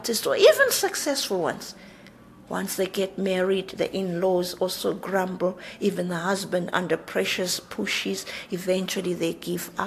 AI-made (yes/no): no